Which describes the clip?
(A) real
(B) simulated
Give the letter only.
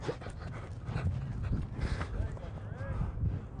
A